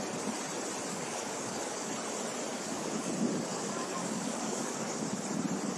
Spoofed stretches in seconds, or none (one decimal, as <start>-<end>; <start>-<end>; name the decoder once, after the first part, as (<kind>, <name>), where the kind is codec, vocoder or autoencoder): 0.9-1.9 (codec, DAC); 2.5-3.1; 3.5-5.0